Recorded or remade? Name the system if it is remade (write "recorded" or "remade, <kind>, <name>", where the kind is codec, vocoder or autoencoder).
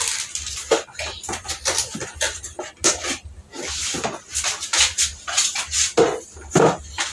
recorded